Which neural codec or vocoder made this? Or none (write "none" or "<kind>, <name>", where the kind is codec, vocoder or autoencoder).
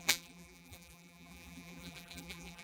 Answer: vocoder, BigVGAN v2